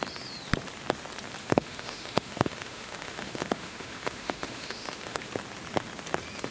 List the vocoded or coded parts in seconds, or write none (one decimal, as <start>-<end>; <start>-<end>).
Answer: 1.4-5.3